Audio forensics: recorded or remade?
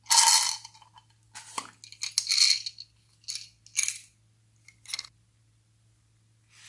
recorded